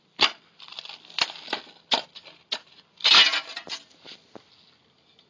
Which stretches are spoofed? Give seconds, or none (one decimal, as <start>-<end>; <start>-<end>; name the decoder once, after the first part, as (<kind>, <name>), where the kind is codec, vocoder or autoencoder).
none